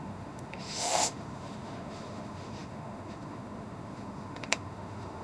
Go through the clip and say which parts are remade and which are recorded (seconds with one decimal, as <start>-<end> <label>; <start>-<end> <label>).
0.0-5.2 remade